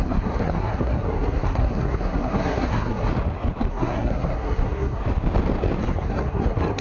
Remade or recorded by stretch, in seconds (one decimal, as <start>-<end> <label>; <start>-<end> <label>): 0.0-3.1 remade; 3.1-3.7 recorded; 3.7-5.0 remade; 5.0-5.8 recorded; 5.8-6.8 remade

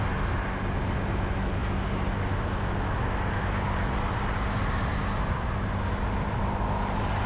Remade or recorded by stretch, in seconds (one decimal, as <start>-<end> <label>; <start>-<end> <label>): 0.0-7.3 recorded